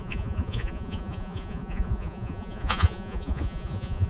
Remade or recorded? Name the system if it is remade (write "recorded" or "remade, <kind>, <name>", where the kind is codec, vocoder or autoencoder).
remade, vocoder, Vocos